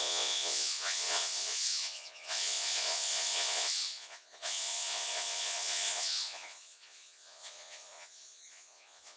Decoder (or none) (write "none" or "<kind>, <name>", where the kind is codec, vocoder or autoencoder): vocoder, Vocos